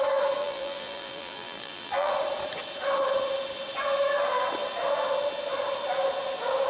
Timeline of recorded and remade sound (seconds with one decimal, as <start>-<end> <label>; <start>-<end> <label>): 0.0-0.4 recorded; 0.4-2.1 remade; 2.1-6.7 recorded